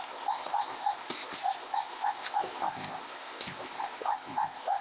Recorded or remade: remade